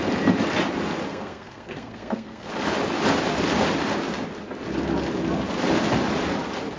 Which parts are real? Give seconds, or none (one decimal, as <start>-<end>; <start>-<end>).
0.0-1.1; 2.5-6.8